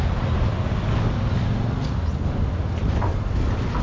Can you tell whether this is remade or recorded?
recorded